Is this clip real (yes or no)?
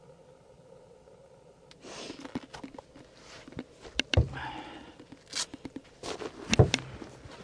yes